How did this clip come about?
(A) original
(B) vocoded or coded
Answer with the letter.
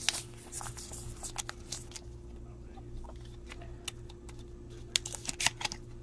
A